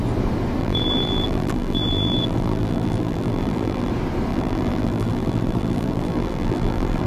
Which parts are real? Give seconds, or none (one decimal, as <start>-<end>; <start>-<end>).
0.0-0.6; 3.9-4.3